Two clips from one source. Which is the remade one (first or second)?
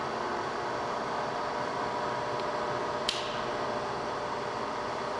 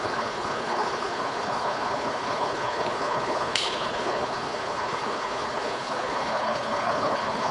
second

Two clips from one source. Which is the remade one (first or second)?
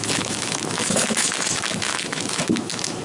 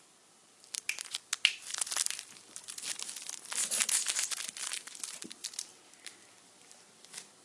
first